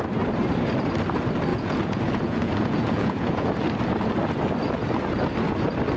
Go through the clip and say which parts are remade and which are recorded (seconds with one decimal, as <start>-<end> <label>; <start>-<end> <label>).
0.0-1.5 recorded; 1.5-3.5 remade; 3.5-6.0 recorded